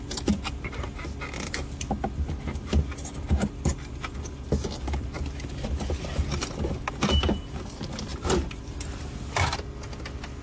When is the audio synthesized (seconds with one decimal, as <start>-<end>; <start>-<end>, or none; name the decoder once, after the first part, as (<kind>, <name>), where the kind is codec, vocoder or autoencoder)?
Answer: 8.1-9.2 (vocoder, BigVGAN v2)